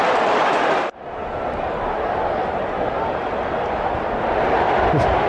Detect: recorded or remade recorded